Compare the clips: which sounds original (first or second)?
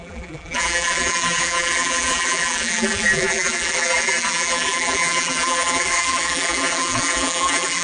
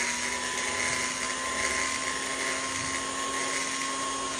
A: second